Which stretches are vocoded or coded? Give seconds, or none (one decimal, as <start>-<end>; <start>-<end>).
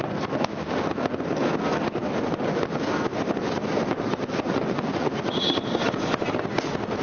4.5-5.1